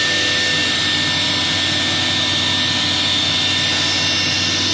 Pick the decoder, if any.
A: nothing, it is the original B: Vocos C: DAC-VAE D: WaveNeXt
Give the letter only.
A